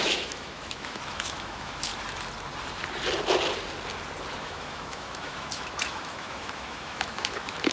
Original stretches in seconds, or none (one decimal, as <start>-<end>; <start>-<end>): 1.9-4.4